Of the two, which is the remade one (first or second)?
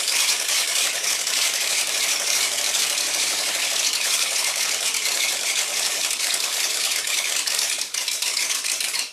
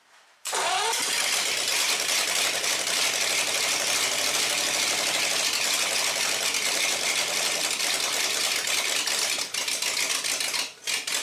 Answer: first